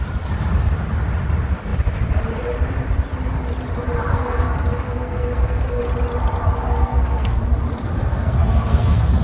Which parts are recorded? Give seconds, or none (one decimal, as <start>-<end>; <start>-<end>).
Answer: 0.0-4.1; 5.8-6.8; 7.4-8.0